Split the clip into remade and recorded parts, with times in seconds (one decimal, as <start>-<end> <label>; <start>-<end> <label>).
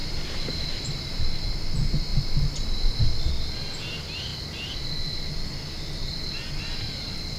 0.0-1.2 remade; 1.2-7.4 recorded